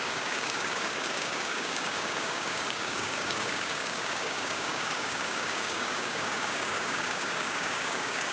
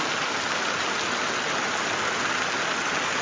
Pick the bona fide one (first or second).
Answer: second